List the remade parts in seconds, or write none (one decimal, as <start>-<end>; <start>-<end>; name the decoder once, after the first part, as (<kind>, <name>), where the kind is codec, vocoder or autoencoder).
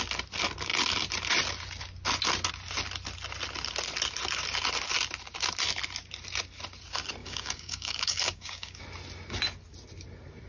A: 7.2-8.8 (codec, DAC)